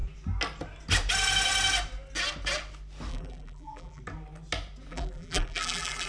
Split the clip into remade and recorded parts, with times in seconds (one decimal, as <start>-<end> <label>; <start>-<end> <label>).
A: 0.0-3.1 recorded; 3.1-4.0 remade; 4.0-4.9 recorded; 4.9-6.1 remade